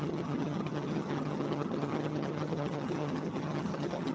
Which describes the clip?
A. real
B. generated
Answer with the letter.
B